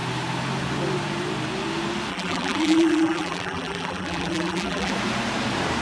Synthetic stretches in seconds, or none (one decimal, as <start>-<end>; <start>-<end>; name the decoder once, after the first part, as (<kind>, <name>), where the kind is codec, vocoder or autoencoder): 2.1-4.9 (vocoder, BigVGAN v2)